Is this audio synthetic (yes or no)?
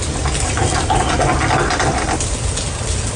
no